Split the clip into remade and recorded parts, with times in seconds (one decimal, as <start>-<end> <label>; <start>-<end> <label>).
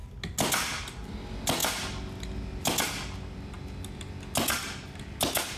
0.0-5.6 recorded